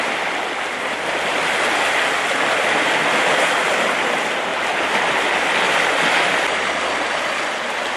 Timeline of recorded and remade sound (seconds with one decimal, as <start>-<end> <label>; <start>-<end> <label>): 0.0-8.0 recorded